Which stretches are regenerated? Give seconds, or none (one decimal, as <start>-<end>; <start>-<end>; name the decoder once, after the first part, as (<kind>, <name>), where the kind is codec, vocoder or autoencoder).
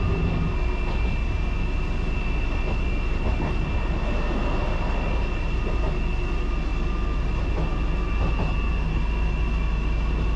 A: none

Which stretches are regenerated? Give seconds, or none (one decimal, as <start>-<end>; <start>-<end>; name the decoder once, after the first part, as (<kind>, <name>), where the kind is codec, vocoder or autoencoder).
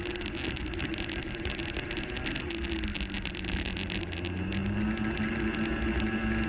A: none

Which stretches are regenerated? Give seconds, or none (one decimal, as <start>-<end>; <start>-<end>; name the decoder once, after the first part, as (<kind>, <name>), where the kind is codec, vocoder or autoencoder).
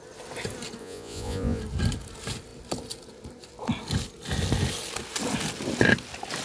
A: 0.8-1.6 (vocoder, Vocos)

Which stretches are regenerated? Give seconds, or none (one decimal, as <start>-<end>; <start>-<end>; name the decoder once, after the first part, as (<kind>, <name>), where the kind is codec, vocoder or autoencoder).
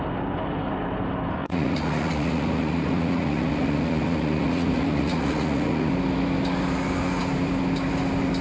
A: 1.4-5.9 (vocoder, Vocos)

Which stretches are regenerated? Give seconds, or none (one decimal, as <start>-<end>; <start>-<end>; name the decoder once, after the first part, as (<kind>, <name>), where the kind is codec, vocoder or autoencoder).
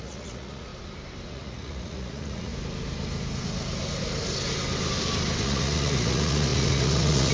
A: 0.0-0.7 (vocoder, Vocos); 1.3-2.5; 5.4-7.3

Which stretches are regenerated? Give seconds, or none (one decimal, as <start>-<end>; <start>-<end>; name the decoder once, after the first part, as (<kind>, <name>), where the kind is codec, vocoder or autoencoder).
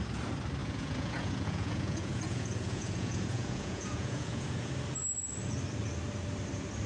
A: 0.6-4.7 (vocoder, Vocos)